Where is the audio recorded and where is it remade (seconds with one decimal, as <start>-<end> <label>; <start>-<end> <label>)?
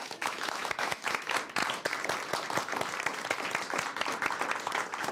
0.0-1.6 remade; 1.6-5.1 recorded